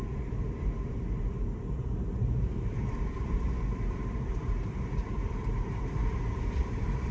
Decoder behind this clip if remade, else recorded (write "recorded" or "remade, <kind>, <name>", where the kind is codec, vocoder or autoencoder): remade, vocoder, BigVGAN v2